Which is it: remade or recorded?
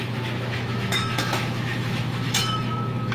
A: remade